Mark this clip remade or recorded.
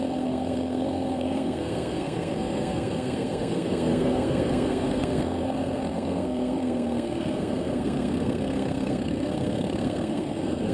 remade